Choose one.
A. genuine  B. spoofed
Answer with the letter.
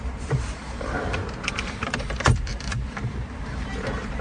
B